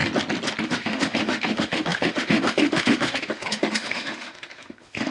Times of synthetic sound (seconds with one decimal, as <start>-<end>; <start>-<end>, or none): 0.6-5.1